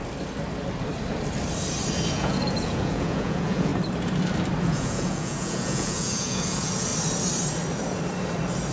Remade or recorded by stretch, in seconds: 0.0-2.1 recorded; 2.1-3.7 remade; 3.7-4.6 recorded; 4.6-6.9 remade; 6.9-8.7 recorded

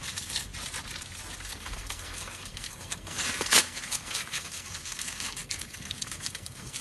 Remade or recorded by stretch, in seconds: 0.0-0.5 remade; 0.5-1.4 recorded; 1.4-6.8 remade

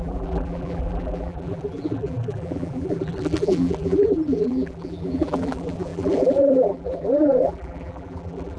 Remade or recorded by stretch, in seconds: 0.0-8.6 remade

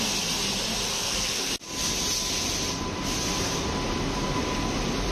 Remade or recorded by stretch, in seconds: 0.0-0.9 recorded; 0.9-1.5 remade; 1.5-5.1 recorded

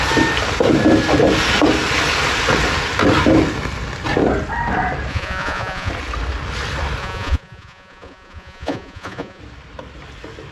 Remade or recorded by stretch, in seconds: 0.0-5.1 recorded; 5.1-5.9 remade; 5.9-7.0 recorded; 7.0-9.4 remade; 9.4-10.5 recorded

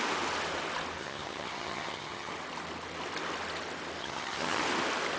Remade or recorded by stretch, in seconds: 0.0-1.0 recorded; 1.0-2.3 remade; 2.3-4.0 recorded; 4.0-4.6 remade; 4.6-5.2 recorded

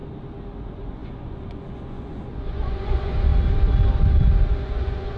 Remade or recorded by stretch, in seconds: 0.0-0.6 recorded; 0.6-3.3 remade; 3.3-4.5 recorded; 4.5-5.2 remade